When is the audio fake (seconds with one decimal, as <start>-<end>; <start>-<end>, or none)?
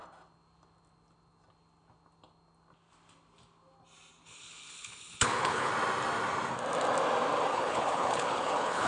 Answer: 4.2-5.7; 7.5-8.9